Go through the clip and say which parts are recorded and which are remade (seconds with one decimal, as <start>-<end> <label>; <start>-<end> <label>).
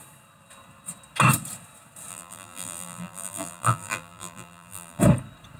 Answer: 0.0-2.1 recorded; 2.1-5.0 remade; 5.0-5.6 recorded